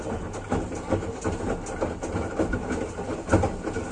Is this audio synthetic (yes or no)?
no